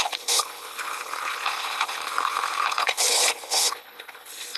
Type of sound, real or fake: fake